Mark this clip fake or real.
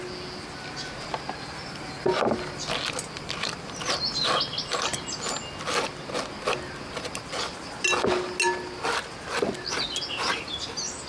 real